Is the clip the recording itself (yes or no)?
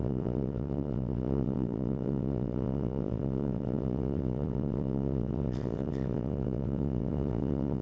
no